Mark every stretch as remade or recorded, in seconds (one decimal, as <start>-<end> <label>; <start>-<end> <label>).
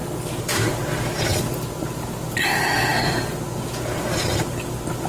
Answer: 0.0-0.8 remade; 0.8-1.3 recorded; 1.3-2.5 remade; 2.5-5.1 recorded